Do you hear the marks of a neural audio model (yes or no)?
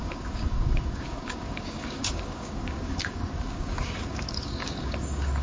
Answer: yes